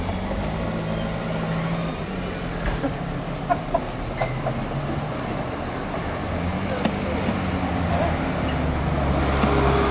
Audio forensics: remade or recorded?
recorded